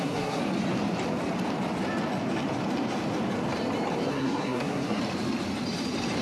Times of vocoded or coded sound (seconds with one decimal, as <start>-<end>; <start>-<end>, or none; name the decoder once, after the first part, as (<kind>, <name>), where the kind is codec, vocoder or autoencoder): 0.0-0.4 (codec, SNAC); 4.1-5.0